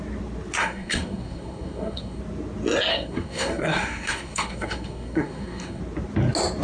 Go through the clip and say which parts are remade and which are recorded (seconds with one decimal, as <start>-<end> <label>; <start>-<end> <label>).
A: 0.0-0.6 recorded; 0.6-2.2 remade; 2.2-2.9 recorded; 2.9-5.8 remade; 5.8-6.6 recorded